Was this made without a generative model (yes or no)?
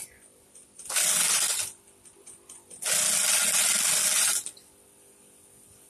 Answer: yes